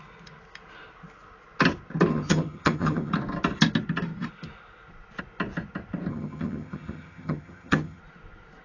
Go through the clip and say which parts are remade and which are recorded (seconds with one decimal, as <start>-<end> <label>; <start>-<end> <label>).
0.0-2.1 recorded; 2.1-3.1 remade; 3.1-6.1 recorded; 6.1-8.0 remade; 8.0-8.6 recorded

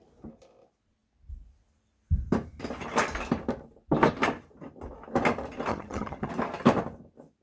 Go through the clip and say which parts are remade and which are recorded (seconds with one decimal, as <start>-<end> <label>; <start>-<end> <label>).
0.0-5.7 recorded; 5.7-6.3 remade; 6.3-7.4 recorded

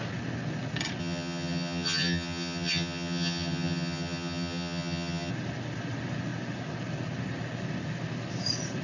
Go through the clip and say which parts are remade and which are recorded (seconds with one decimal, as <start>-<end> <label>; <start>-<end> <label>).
0.0-1.0 recorded; 1.0-5.3 remade; 5.3-8.8 recorded

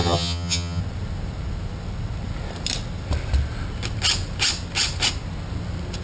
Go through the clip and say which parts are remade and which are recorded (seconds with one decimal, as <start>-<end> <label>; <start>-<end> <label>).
0.0-0.8 remade; 0.8-6.0 recorded

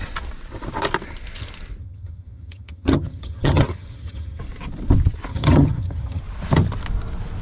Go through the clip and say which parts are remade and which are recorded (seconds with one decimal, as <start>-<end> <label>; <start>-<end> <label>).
0.0-1.8 recorded; 1.8-4.4 remade; 4.4-5.3 recorded; 5.3-6.2 remade; 6.2-7.4 recorded

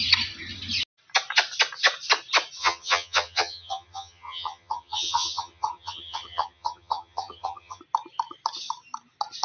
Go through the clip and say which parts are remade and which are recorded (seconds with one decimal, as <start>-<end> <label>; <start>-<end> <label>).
0.0-2.6 recorded; 2.6-7.8 remade; 7.8-9.4 recorded